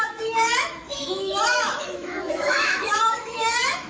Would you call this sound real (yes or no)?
no